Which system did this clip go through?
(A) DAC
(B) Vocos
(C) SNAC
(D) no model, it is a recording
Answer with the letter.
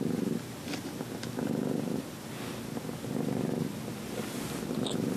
D